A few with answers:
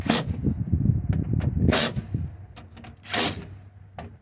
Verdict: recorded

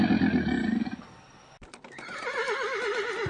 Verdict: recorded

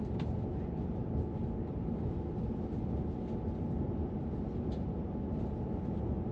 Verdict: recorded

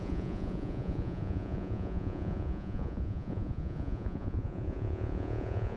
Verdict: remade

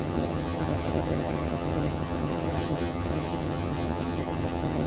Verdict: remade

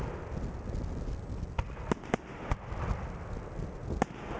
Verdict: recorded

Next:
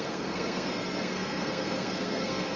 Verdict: remade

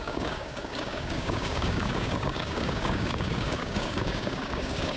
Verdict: remade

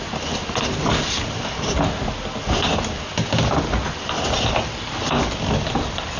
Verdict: recorded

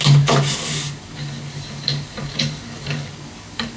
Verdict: remade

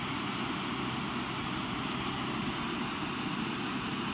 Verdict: recorded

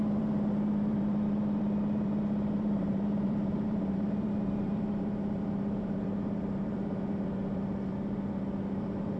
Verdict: remade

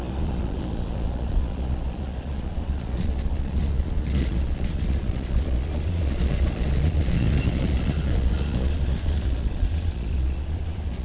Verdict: remade